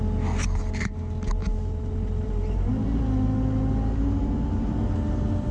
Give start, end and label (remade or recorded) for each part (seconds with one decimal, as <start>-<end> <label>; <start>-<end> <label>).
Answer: 0.0-1.4 recorded; 1.4-2.7 remade; 2.7-5.5 recorded